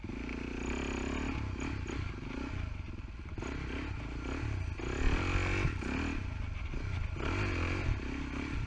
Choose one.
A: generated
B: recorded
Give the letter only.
B